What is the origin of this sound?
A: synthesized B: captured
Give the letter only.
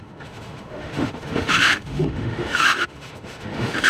A